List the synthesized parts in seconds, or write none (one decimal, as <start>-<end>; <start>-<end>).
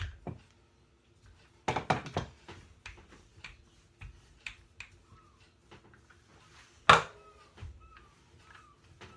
none